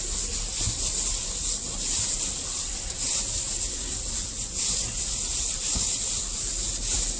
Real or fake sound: real